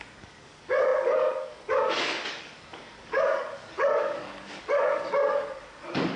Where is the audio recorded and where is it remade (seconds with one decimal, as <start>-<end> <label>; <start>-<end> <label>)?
0.0-6.2 remade